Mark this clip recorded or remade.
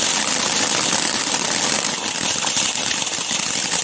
recorded